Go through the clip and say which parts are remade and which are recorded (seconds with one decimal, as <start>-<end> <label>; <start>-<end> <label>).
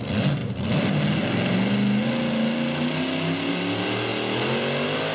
0.0-5.1 recorded